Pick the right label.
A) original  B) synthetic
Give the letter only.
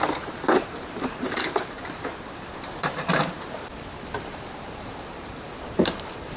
B